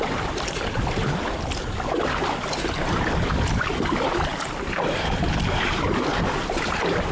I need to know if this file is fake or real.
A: real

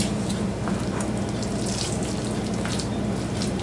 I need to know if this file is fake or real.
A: real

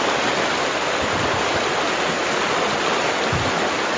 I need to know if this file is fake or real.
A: real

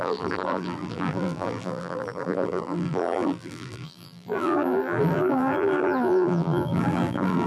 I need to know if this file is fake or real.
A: fake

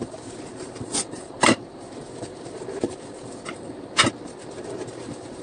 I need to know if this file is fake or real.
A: fake